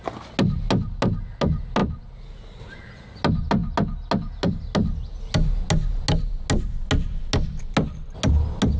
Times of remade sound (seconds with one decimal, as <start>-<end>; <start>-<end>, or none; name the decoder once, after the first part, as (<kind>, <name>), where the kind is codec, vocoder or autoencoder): none